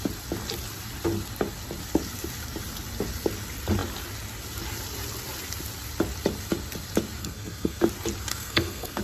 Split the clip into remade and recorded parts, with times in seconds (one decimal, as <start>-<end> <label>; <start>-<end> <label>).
0.0-7.2 recorded; 7.2-7.8 remade; 7.8-8.3 recorded; 8.3-9.0 remade